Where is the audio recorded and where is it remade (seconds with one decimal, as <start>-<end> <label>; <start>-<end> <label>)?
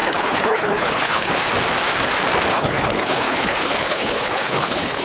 0.0-1.3 remade; 1.3-2.5 recorded; 2.5-5.0 remade